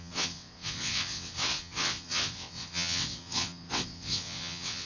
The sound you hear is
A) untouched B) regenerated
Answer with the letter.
B